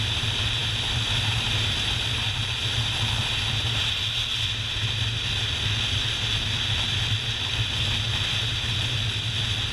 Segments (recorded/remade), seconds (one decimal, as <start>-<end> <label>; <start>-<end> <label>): 0.0-9.7 recorded